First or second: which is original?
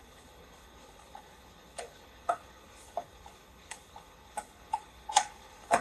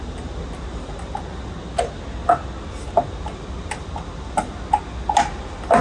second